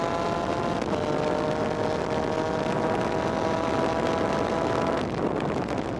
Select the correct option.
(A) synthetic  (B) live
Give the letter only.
B